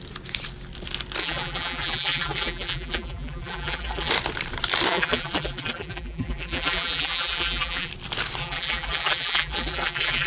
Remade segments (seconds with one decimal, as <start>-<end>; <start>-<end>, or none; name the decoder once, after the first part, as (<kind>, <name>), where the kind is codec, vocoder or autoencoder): 1.2-4.1 (vocoder, BigVGAN v2); 4.9-7.9; 8.4-10.3